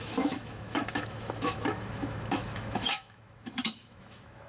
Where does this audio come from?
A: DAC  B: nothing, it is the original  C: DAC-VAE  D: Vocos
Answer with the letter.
C